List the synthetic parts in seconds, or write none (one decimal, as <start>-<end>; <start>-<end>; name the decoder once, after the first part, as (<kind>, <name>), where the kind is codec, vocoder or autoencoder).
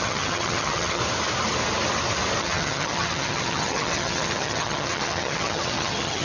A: 0.0-1.0 (vocoder, HiFi-GAN); 2.4-6.2